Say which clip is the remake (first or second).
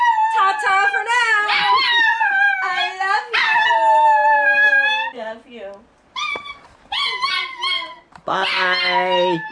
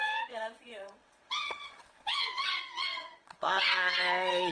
second